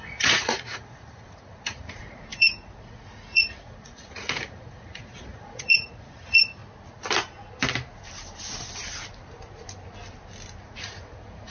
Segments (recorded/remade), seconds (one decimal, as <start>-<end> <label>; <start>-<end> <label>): 0.0-6.6 remade; 6.6-10.6 recorded; 10.6-11.5 remade